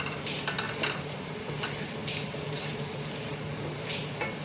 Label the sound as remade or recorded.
recorded